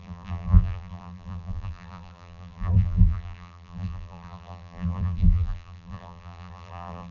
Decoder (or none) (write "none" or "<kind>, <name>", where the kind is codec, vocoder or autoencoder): vocoder, BigVGAN v2